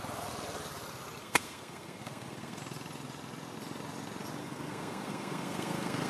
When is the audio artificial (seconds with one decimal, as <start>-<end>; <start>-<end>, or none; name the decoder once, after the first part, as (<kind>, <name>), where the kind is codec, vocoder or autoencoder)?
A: 1.2-2.6 (codec, SNAC); 4.4-6.1